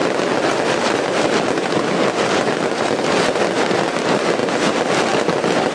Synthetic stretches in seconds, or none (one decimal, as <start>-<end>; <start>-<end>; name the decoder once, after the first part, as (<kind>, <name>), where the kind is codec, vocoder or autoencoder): none